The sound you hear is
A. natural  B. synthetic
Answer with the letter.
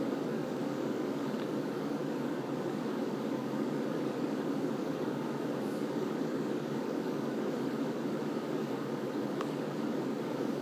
B